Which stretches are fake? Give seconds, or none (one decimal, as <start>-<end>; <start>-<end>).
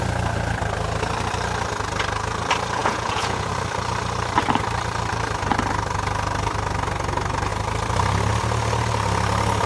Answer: 2.8-3.5